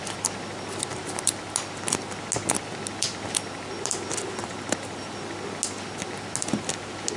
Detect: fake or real real